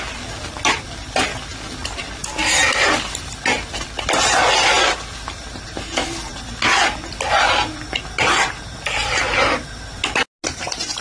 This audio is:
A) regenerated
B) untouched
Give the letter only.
B